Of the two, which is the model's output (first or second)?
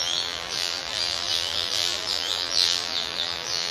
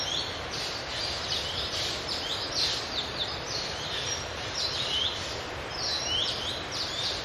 first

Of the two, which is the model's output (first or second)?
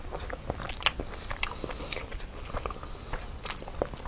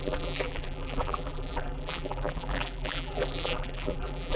second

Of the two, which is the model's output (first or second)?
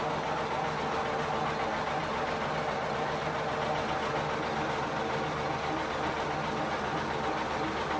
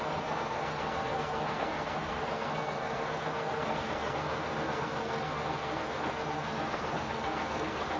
second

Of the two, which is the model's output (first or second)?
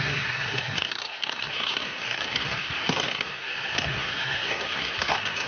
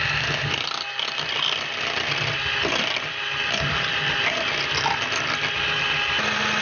first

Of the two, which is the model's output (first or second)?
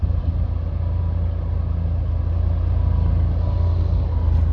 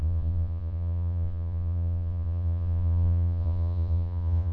second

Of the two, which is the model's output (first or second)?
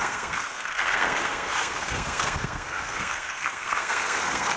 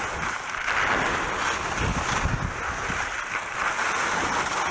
first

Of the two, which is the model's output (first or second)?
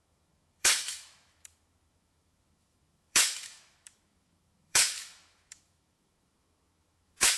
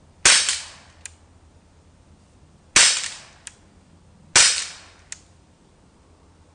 first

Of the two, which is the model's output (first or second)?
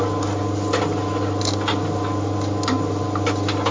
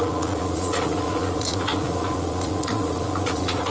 second